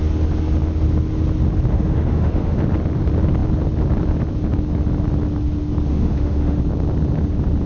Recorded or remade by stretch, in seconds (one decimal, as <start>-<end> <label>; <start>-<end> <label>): 0.0-1.7 recorded; 1.7-2.6 remade; 2.6-5.9 recorded; 5.9-6.6 remade; 6.6-7.7 recorded